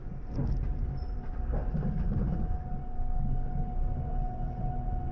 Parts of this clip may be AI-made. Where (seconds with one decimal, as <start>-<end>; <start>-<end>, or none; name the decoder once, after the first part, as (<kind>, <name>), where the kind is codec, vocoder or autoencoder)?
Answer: 2.8-4.1 (codec, DAC)